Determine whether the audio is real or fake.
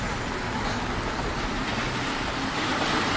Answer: real